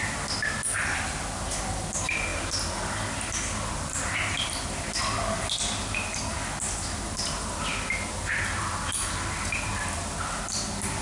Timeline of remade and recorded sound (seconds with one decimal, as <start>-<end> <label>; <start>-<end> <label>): 0.0-11.0 recorded